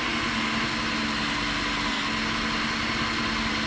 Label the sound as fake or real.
real